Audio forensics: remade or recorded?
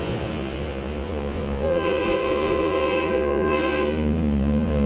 remade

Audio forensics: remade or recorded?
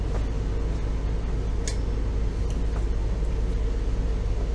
recorded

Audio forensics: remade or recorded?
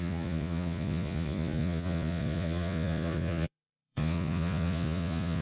remade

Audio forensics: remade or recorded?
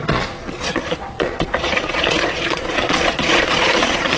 remade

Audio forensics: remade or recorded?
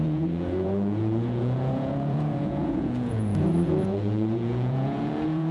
remade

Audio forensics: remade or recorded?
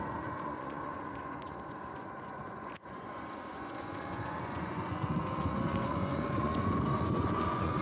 remade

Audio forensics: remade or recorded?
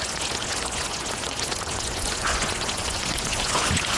remade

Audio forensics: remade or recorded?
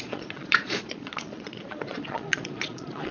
remade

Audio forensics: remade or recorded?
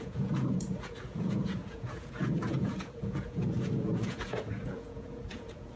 remade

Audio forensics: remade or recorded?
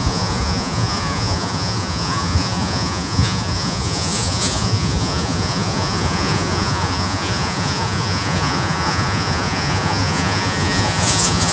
remade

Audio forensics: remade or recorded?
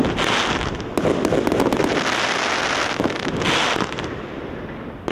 recorded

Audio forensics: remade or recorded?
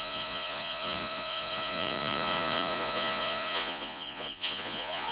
remade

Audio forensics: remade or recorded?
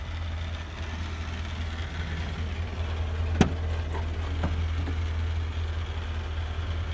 recorded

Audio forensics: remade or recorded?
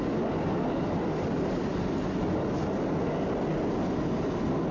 recorded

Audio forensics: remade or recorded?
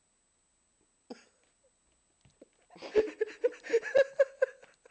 recorded